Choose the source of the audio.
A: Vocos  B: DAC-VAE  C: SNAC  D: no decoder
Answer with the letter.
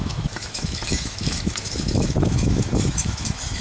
B